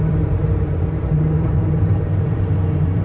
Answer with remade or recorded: remade